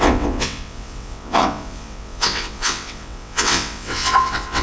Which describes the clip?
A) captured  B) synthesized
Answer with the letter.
B